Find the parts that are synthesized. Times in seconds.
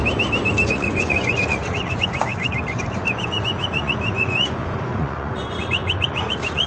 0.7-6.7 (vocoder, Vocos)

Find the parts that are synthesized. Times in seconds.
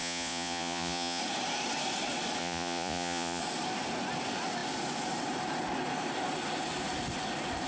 0.0-1.2 (vocoder, Vocos); 2.4-3.4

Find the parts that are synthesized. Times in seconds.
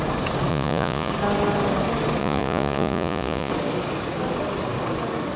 0.5-1.1 (vocoder, Vocos); 2.2-3.5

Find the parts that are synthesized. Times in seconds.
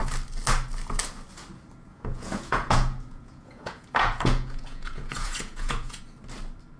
1.9-6.0 (vocoder, Vocos)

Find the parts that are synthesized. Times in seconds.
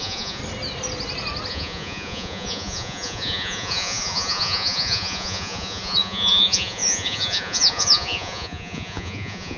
0.0-0.4 (vocoder, Vocos); 1.5-9.6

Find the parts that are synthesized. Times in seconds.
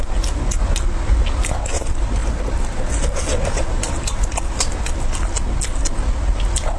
none